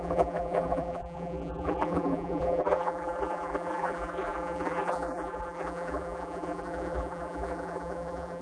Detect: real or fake fake